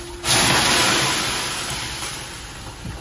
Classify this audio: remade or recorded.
recorded